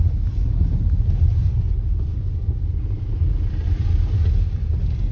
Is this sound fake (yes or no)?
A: no